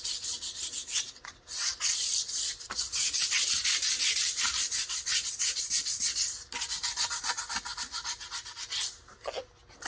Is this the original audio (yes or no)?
yes